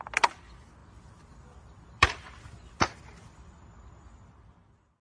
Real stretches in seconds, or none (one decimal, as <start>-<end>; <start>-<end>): 0.0-0.8; 3.5-5.1